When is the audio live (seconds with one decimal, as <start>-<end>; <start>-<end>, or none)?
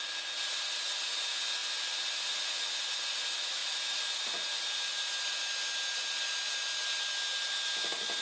0.0-8.2